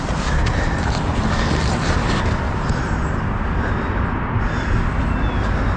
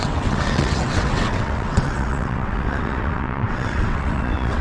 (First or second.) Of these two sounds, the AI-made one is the second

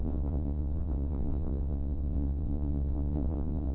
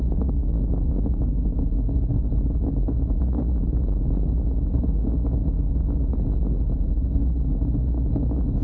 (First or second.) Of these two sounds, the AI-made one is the first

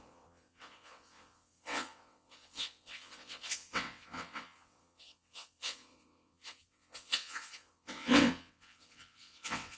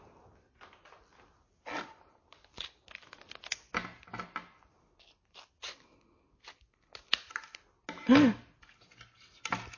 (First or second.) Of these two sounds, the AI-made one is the first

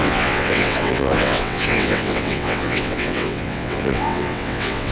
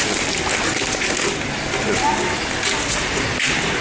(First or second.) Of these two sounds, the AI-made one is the first